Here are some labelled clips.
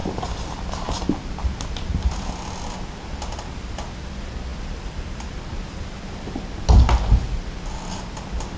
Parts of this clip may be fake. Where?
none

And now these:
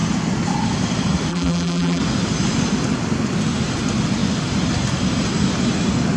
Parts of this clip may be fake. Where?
1.3-2.0 (vocoder, BigVGAN v2)